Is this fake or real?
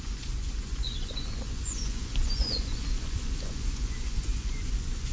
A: fake